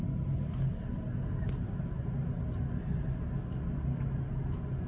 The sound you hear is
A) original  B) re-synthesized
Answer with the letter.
A